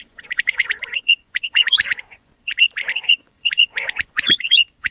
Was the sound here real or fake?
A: fake